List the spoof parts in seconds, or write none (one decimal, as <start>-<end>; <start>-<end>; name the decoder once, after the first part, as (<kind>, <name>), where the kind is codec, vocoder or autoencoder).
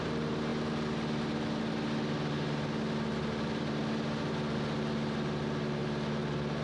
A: none